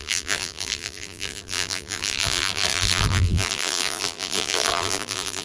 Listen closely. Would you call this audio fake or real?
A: fake